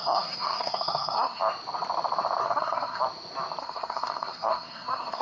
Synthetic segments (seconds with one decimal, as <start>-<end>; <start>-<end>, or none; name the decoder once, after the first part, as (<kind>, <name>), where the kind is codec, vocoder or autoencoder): 0.0-1.4 (codec, SNAC); 2.4-3.0; 3.6-5.2